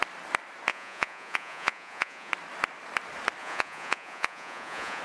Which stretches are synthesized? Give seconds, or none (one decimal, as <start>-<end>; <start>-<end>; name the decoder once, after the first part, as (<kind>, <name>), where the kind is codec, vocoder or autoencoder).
0.7-2.3 (vocoder, Vocos); 3.4-5.0